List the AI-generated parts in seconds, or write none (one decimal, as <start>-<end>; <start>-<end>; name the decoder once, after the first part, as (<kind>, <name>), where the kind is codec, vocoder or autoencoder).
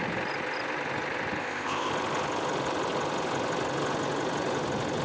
1.4-1.9 (codec, ZipCodec)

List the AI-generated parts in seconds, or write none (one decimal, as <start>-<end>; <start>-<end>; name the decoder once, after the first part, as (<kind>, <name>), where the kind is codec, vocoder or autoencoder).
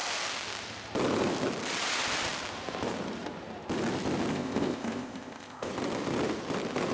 4.3-5.7 (codec, ZipCodec)